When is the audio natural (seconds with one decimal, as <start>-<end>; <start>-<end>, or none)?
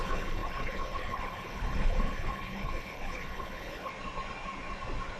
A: 3.9-5.2